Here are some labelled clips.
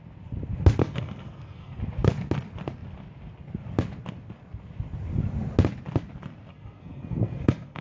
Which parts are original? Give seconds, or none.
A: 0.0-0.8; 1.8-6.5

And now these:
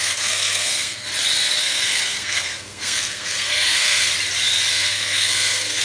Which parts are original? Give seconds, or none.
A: 1.1-1.6; 4.1-4.7

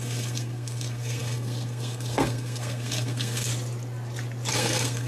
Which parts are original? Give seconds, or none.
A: 3.5-4.5

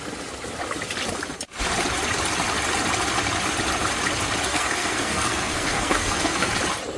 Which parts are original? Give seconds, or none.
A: 0.0-4.5; 6.5-7.0

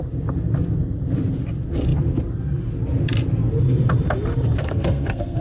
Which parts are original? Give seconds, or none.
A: 0.0-4.6

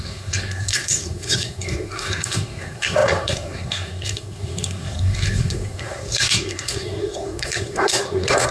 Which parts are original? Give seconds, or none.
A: none

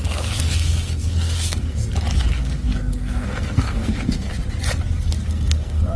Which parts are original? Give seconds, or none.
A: 1.8-2.3; 4.3-5.3

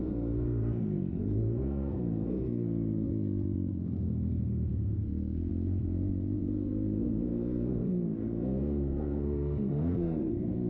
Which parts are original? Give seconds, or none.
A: 3.1-3.7